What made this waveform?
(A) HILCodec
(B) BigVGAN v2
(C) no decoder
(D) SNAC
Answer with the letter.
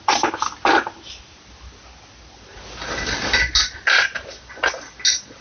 C